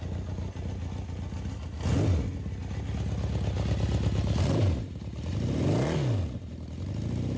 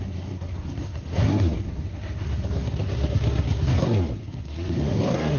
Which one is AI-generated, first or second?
second